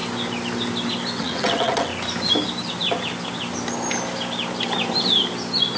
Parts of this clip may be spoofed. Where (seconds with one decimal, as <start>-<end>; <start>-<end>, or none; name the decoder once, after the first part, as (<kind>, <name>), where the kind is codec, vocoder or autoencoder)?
1.2-1.9 (vocoder, WaveNeXt)